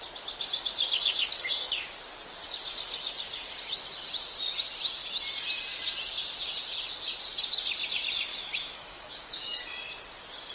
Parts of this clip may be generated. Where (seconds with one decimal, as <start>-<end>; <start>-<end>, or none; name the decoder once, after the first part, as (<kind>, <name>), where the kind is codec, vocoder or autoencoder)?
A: 8.3-9.6 (autoencoder, DAC-VAE)